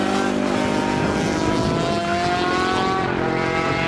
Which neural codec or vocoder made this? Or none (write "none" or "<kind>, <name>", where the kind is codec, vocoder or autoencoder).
none